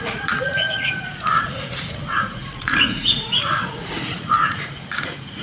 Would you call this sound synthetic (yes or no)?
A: yes